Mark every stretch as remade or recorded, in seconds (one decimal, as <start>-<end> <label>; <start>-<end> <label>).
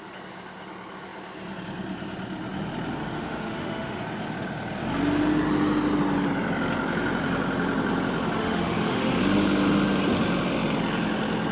0.0-3.0 recorded; 3.0-4.0 remade; 4.0-8.4 recorded; 8.4-9.2 remade; 9.2-11.5 recorded